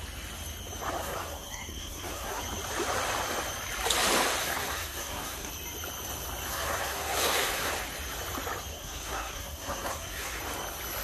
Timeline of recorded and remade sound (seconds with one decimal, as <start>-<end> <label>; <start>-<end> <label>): 0.0-1.0 recorded; 1.0-2.4 remade; 2.4-4.4 recorded; 4.4-5.5 remade; 5.5-6.5 recorded; 6.5-7.7 remade; 7.7-8.7 recorded; 8.7-10.4 remade; 10.4-11.0 recorded